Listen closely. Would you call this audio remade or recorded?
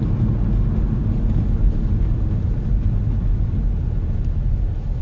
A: recorded